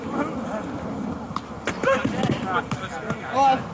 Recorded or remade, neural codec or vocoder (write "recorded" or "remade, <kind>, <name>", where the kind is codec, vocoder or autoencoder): recorded